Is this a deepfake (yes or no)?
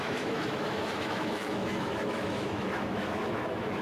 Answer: yes